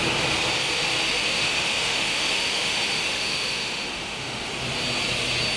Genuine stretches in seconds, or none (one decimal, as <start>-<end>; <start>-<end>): 0.0-1.1; 4.5-5.6